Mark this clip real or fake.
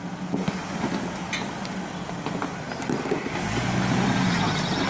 real